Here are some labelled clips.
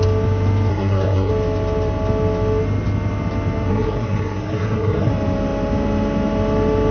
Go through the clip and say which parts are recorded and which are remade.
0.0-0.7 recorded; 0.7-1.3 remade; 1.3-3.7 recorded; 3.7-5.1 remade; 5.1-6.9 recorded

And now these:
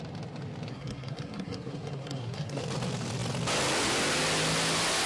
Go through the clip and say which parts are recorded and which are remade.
0.0-0.7 recorded; 0.7-2.6 remade; 2.6-5.1 recorded

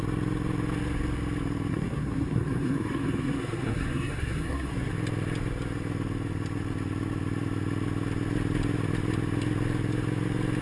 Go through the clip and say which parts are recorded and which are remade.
0.0-1.7 recorded; 1.7-4.9 remade; 4.9-10.6 recorded

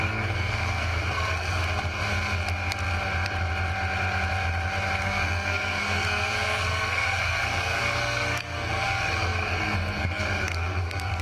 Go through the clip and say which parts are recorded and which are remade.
0.0-1.6 remade; 1.6-5.0 recorded; 5.0-11.2 remade

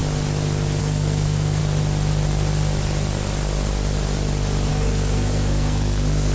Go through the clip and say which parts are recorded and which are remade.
0.0-0.8 recorded; 0.8-1.6 remade; 1.6-4.7 recorded; 4.7-6.3 remade

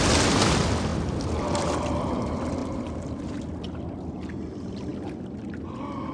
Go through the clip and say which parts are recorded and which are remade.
0.0-6.1 recorded

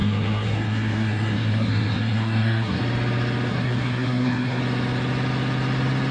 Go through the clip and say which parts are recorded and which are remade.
0.0-2.8 remade; 2.8-3.5 recorded; 3.5-4.6 remade; 4.6-6.1 recorded

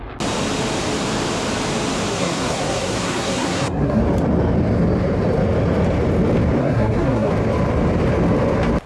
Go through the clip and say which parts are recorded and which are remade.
0.0-2.1 recorded; 2.1-4.0 remade; 4.0-6.6 recorded; 6.6-7.3 remade; 7.3-8.9 recorded